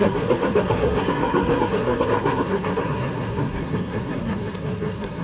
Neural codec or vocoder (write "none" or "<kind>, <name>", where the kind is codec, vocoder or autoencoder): codec, SNAC